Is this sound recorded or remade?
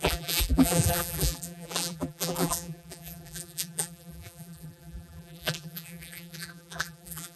remade